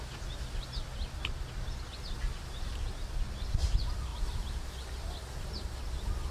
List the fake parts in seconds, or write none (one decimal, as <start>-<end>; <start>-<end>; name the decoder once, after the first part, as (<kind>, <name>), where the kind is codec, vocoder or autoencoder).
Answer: 2.3-2.9 (vocoder, BigVGAN v2); 4.1-4.7